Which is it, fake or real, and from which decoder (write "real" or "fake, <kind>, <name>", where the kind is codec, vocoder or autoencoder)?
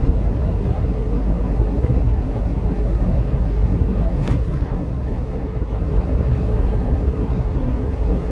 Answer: fake, codec, SNAC